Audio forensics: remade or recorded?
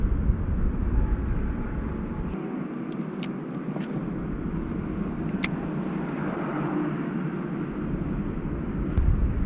recorded